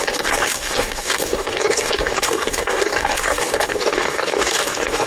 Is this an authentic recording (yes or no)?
no